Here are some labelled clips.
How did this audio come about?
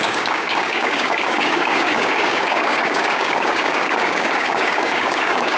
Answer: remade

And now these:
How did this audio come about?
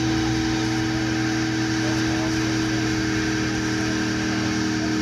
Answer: recorded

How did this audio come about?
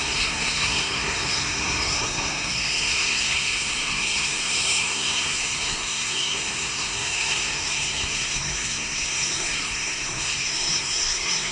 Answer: remade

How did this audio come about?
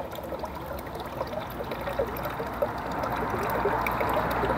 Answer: recorded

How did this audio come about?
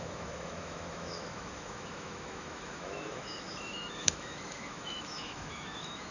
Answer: remade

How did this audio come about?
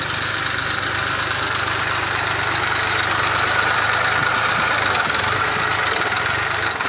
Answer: recorded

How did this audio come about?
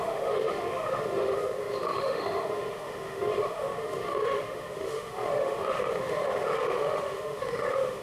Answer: remade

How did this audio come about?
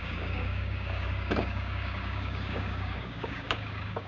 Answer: remade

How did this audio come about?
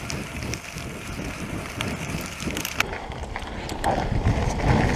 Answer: remade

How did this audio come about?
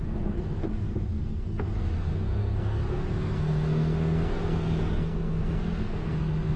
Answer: remade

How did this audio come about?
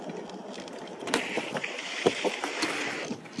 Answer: recorded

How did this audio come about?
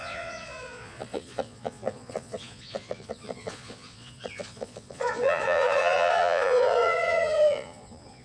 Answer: remade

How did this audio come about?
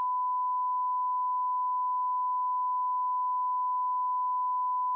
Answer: recorded